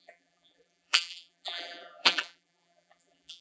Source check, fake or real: fake